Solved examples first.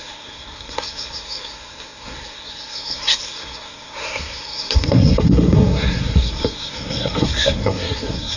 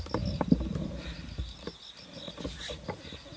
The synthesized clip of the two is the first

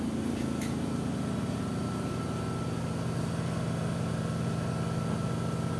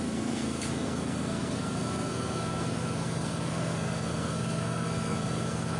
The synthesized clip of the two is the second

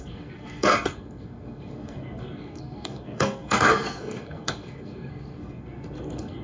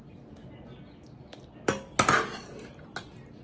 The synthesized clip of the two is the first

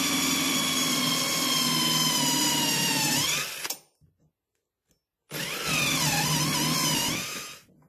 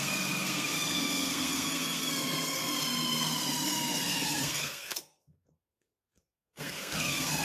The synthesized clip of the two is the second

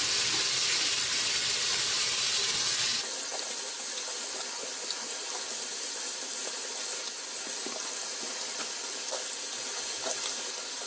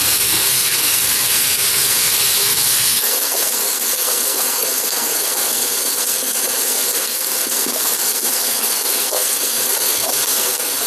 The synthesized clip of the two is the second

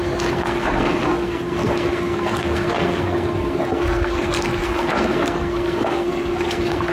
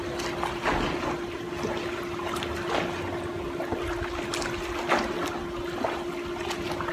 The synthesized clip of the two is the first